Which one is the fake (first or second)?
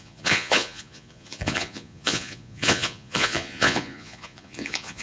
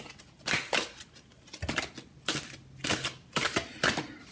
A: first